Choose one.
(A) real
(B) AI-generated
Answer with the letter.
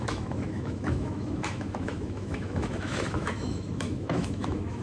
B